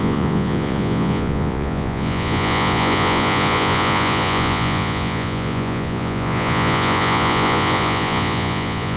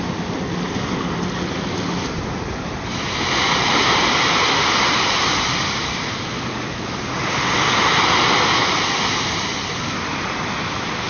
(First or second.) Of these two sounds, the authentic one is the second